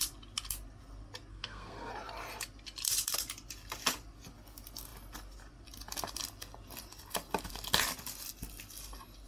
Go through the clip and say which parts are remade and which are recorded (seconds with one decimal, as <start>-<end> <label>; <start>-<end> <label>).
0.0-1.3 recorded; 1.3-1.9 remade; 1.9-9.3 recorded